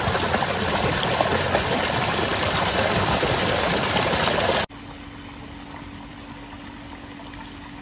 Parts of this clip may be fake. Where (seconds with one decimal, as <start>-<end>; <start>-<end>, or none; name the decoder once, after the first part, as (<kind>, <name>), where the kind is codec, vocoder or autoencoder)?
none